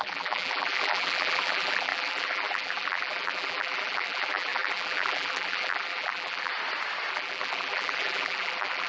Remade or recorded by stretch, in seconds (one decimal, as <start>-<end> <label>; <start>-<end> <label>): 0.0-6.5 remade; 6.5-7.1 recorded; 7.1-8.9 remade